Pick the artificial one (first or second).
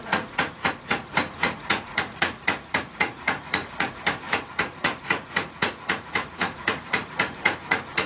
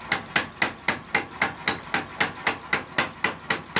first